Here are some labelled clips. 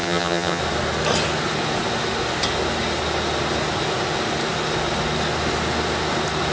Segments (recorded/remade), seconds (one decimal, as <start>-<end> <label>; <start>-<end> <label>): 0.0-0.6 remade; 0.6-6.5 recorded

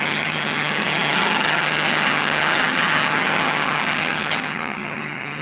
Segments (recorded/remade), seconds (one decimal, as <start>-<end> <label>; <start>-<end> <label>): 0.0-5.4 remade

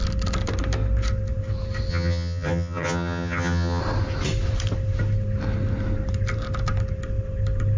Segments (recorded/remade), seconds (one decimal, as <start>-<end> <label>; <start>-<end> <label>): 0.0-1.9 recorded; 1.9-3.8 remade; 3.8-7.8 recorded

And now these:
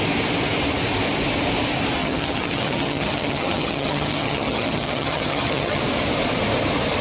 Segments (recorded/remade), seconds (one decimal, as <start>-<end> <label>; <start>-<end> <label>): 0.0-2.0 recorded; 2.0-5.8 remade; 5.8-7.0 recorded

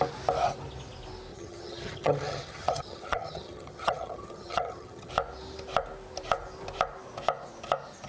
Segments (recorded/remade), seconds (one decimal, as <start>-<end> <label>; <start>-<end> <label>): 0.0-1.3 recorded; 1.3-5.1 remade; 5.1-8.1 recorded

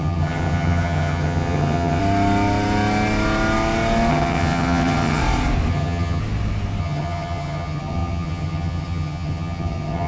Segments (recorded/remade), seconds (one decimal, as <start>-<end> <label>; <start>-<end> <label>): 0.0-2.0 remade; 2.0-4.1 recorded; 4.1-5.2 remade; 5.2-5.7 recorded; 5.7-6.2 remade; 6.2-6.8 recorded; 6.8-10.1 remade